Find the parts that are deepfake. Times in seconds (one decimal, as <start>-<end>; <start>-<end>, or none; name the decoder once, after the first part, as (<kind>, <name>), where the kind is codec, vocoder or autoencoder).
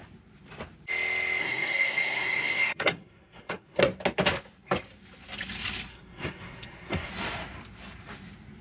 1.4-3.8 (codec, SNAC); 5.9-7.1